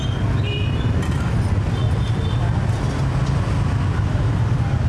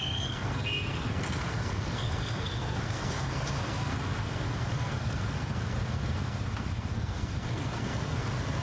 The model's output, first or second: second